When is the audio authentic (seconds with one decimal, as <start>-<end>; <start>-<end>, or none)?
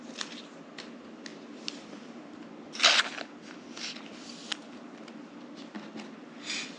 0.0-6.8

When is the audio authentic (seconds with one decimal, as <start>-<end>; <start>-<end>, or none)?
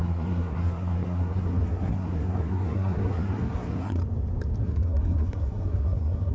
4.0-4.6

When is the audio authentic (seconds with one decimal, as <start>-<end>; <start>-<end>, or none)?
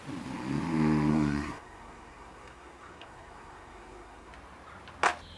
0.0-1.1; 4.3-5.4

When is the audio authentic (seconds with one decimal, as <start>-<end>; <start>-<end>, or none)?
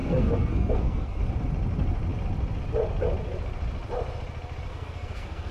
1.2-4.7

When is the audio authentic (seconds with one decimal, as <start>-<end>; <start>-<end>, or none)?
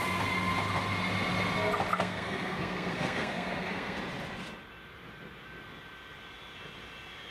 0.0-1.9; 4.0-7.3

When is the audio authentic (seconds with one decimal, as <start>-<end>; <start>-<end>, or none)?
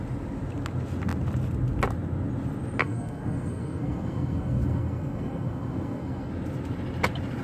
0.0-2.8; 6.3-7.4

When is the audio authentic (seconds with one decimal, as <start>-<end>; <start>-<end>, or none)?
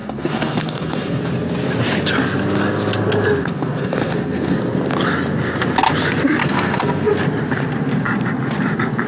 1.2-3.4; 4.6-6.4; 7.1-9.1